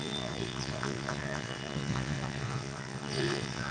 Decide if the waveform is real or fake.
fake